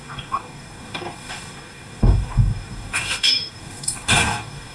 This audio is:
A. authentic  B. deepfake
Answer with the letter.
B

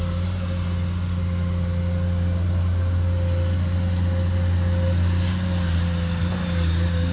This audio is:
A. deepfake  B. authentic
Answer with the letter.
B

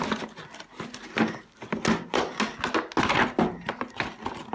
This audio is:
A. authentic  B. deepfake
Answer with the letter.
A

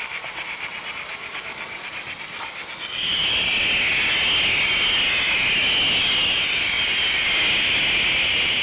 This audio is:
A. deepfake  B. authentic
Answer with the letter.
B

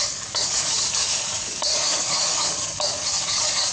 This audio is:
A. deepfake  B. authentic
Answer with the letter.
A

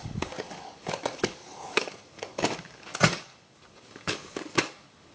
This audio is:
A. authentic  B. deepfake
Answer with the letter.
B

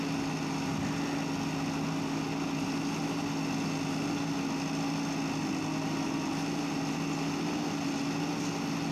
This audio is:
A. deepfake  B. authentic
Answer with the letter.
B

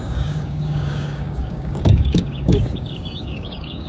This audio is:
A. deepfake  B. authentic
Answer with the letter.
A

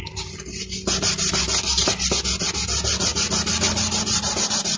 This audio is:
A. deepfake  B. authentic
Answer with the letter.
B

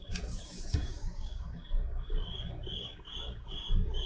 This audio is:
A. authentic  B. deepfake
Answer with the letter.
B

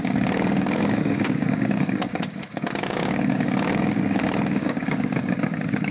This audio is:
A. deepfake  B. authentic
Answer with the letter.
A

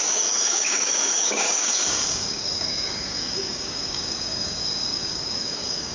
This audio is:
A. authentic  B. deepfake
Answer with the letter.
B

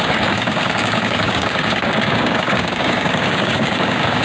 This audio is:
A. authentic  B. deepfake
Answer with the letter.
B